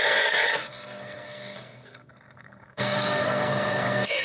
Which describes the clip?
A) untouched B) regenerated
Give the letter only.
B